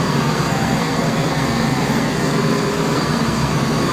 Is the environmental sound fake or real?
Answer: fake